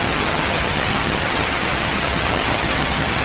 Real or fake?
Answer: fake